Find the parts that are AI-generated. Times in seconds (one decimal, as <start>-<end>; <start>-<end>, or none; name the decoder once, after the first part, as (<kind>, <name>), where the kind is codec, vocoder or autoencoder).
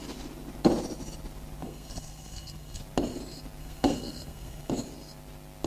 1.6-2.8 (codec, SNAC); 3.6-4.7